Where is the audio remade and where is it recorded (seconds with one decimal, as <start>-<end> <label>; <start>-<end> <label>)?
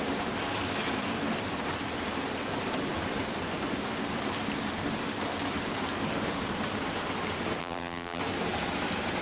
0.0-7.6 recorded; 7.6-8.2 remade; 8.2-9.2 recorded